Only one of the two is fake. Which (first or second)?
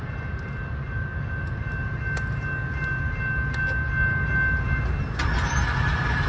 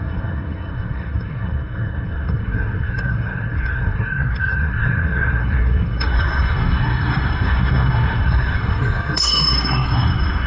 second